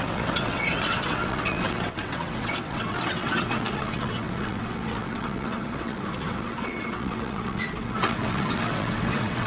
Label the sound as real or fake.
fake